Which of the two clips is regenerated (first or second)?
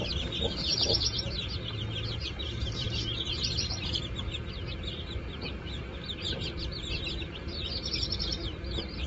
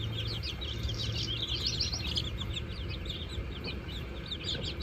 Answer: first